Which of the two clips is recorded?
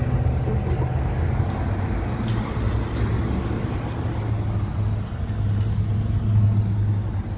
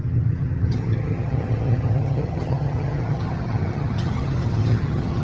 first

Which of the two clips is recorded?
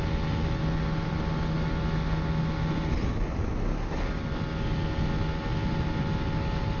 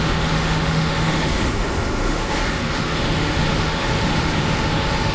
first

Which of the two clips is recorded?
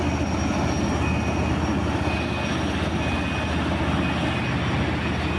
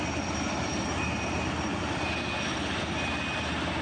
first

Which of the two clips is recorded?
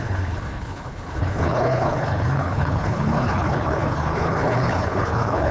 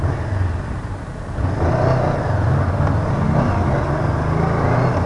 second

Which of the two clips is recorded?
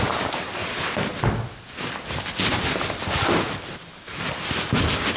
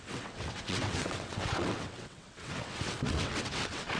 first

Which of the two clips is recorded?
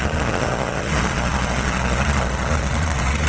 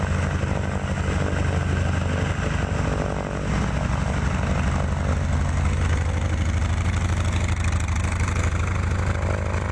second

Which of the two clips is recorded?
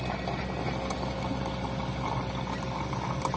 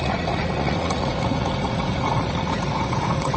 first